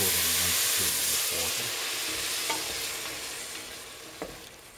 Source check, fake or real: real